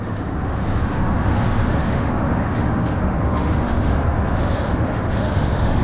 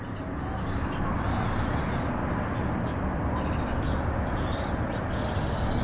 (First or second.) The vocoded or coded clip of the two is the first